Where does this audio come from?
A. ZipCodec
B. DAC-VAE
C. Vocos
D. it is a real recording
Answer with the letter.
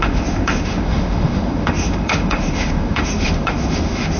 B